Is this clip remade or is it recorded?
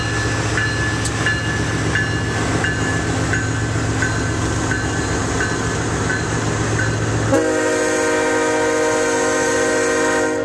recorded